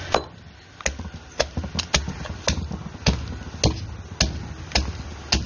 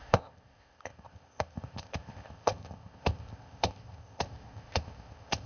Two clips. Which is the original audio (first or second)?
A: first